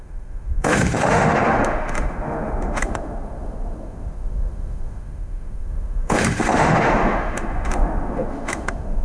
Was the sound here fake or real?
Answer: fake